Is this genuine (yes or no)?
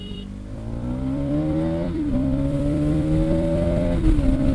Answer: no